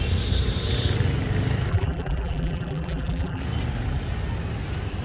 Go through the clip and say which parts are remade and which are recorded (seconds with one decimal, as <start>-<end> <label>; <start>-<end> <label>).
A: 0.0-1.7 recorded; 1.7-3.4 remade; 3.4-5.0 recorded